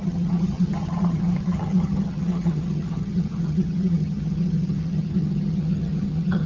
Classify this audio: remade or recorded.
remade